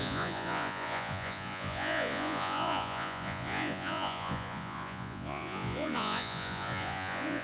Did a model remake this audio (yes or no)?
yes